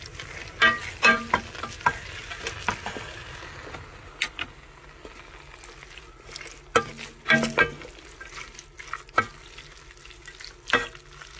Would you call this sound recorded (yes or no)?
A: yes